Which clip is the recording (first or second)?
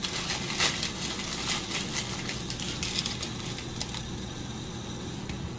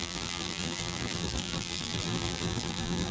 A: first